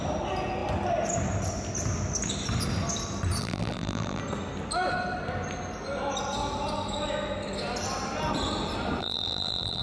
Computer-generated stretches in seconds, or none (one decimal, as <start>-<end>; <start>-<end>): 3.4-4.2; 9.0-9.8